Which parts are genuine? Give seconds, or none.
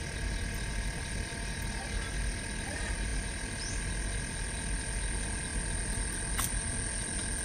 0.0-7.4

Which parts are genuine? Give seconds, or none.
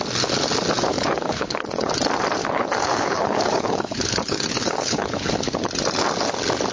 0.0-0.9; 1.9-2.4; 5.7-6.7